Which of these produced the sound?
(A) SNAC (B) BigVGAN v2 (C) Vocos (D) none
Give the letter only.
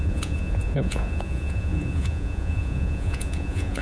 C